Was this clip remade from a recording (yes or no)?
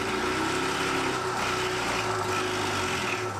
no